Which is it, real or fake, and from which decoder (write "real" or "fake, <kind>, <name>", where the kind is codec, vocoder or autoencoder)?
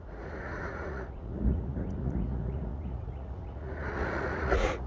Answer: fake, vocoder, Vocos